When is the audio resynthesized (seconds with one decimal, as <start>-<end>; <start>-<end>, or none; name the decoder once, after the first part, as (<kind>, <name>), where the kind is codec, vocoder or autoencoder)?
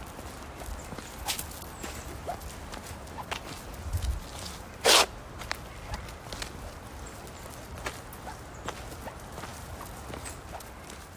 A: none